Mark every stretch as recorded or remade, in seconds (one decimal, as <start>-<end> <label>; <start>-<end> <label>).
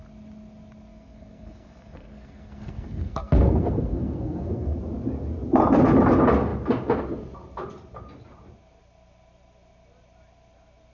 0.0-0.9 recorded; 0.9-4.8 remade; 4.8-10.9 recorded